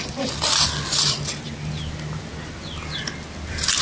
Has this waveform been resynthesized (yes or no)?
no